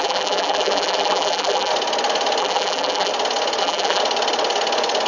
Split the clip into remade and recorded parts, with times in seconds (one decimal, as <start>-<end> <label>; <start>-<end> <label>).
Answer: 0.0-1.7 remade; 1.7-2.4 recorded; 2.4-3.1 remade; 3.1-3.6 recorded; 3.6-4.0 remade; 4.0-5.1 recorded